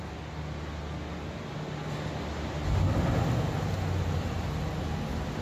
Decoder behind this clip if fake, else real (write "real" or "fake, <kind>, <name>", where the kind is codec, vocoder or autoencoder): real